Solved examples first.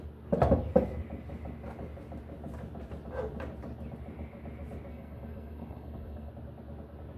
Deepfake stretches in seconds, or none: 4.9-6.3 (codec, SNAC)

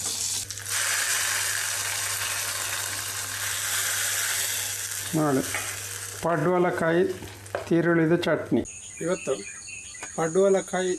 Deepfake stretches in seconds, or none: none

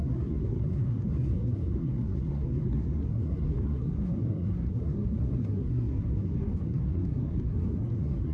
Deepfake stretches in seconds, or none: 0.0-8.3 (codec, SNAC)

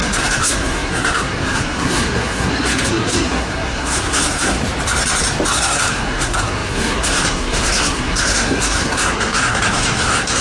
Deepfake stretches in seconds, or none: 0.0-4.6 (codec, SNAC); 5.5-10.4

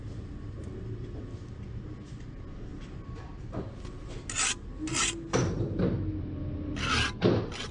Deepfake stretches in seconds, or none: none

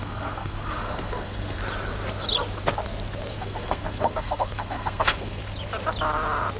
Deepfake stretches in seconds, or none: 0.0-1.6 (codec, SNAC); 3.3-5.4